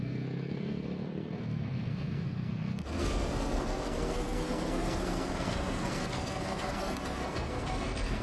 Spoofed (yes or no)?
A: yes